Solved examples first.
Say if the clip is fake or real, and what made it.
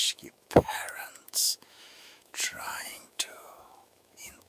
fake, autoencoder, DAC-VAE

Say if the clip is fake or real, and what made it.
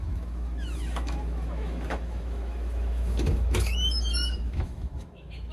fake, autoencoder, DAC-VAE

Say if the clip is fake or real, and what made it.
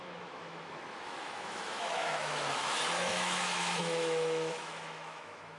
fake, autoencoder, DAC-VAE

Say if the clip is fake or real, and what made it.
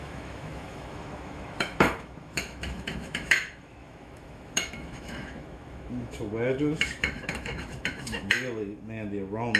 fake, autoencoder, DAC-VAE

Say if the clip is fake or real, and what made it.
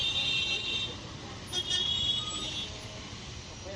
real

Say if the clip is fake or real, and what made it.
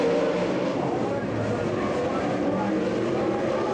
real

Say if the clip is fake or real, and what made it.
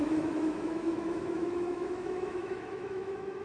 fake, autoencoder, DAC-VAE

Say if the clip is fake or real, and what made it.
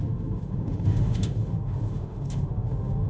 fake, autoencoder, DAC-VAE